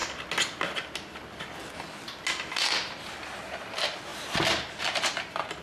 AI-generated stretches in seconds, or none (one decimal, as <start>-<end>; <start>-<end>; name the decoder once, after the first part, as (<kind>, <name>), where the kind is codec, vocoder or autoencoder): 3.4-4.1 (vocoder, BigVGAN v2); 4.9-5.6